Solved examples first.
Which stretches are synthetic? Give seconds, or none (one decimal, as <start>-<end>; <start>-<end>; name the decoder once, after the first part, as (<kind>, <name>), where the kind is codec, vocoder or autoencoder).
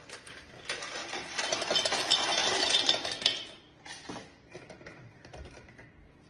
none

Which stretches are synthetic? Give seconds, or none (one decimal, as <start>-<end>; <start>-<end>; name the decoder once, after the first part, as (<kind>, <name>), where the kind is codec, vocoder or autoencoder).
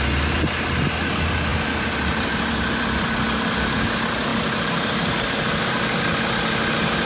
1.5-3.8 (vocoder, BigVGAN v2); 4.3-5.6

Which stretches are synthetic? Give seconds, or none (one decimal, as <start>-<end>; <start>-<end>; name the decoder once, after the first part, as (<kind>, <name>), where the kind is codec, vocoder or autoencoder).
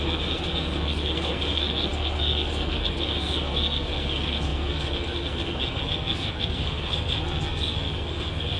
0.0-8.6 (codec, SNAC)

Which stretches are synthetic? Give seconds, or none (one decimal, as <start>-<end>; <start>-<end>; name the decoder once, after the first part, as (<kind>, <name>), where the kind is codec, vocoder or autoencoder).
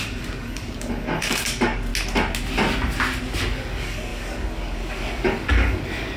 0.0-1.9 (codec, DAC); 3.5-6.2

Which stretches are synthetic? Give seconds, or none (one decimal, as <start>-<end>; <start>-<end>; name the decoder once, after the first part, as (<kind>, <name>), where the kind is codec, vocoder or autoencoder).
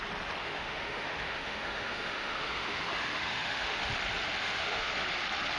0.4-3.8 (autoencoder, DAC-VAE); 4.4-4.9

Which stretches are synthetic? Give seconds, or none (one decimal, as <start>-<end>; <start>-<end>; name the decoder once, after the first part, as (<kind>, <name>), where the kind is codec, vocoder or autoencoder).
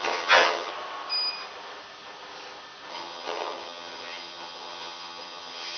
0.0-0.7 (vocoder, HiFi-GAN); 2.9-5.8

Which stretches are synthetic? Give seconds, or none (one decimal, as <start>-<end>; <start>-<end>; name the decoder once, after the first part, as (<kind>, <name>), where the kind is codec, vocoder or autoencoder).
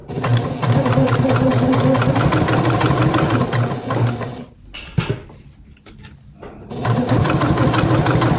6.8-7.9 (vocoder, BigVGAN v2)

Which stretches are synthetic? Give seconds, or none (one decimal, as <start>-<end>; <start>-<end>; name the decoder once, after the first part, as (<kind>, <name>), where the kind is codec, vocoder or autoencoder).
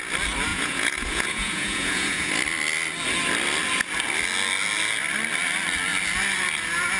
0.5-2.3 (vocoder, Vocos)